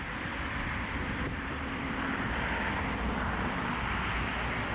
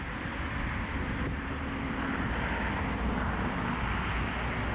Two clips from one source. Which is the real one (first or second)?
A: second